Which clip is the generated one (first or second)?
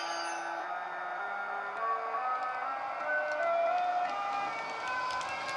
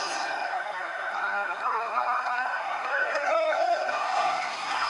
second